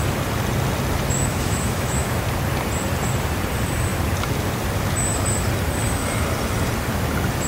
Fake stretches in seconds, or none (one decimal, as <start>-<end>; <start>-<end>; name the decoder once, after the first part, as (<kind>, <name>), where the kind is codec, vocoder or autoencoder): 1.3-2.2 (autoencoder, DAC-VAE)